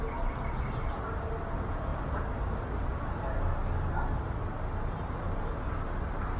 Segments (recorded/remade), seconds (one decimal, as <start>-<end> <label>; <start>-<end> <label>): 0.0-6.4 recorded